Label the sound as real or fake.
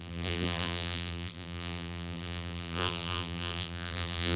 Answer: fake